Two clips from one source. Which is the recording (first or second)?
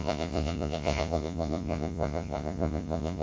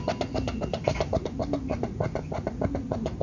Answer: second